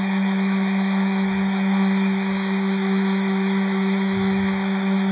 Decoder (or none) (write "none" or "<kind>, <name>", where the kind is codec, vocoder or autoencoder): autoencoder, DAC-VAE